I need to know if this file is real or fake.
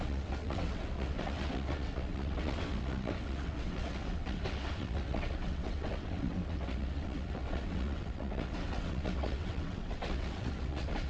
fake